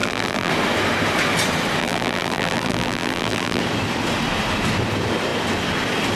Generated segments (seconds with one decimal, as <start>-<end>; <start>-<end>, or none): 0.0-0.5; 1.8-3.6